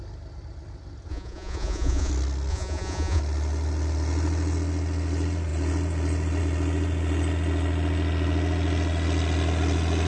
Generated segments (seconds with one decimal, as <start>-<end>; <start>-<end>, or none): 1.1-2.1; 2.5-3.2